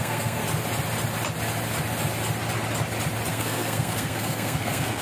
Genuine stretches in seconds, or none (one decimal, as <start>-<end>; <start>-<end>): 0.4-3.3